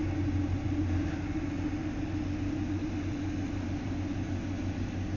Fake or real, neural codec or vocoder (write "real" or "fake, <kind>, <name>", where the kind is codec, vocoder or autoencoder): real